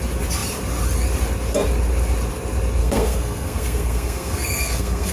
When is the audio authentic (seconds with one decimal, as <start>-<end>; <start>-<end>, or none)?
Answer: 0.0-2.8